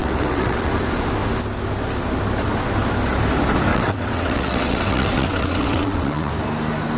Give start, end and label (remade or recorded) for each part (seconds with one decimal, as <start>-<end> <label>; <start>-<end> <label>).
0.0-0.7 remade; 0.7-3.7 recorded; 3.7-6.3 remade; 6.3-7.0 recorded